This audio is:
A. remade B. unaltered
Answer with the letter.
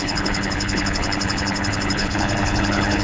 A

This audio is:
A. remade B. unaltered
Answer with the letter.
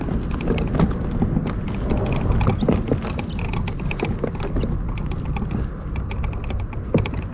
B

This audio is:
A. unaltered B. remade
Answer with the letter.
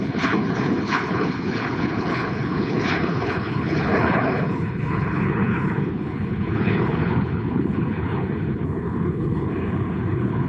B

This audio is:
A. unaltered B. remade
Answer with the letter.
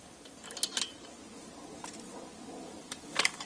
A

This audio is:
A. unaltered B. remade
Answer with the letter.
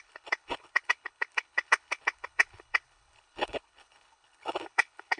B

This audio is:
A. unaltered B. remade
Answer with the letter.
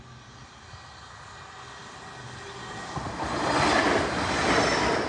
A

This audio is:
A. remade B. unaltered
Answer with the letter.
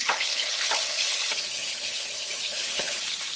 A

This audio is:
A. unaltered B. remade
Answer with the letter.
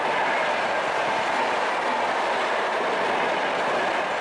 A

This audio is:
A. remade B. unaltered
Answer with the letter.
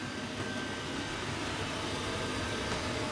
B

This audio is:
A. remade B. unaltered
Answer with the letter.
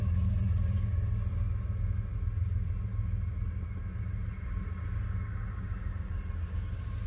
B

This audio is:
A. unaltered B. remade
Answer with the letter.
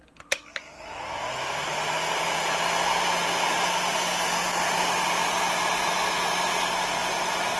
A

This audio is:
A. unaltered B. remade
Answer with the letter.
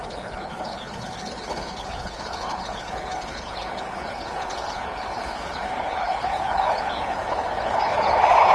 B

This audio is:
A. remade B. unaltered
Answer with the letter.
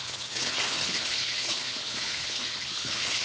A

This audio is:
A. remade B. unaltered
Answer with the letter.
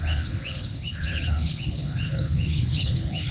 A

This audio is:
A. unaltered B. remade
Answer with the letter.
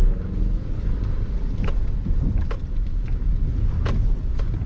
A